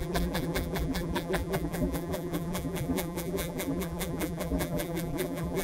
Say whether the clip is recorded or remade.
remade